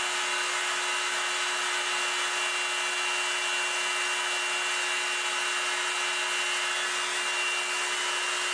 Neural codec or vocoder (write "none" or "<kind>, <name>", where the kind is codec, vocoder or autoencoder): none